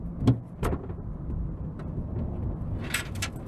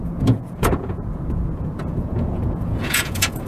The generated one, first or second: second